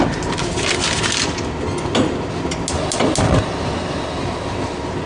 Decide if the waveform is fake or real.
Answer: real